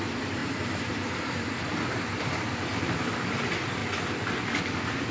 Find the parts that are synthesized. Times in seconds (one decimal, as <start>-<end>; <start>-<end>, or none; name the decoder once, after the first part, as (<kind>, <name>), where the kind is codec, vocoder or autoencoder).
0.4-1.8 (vocoder, BigVGAN v2)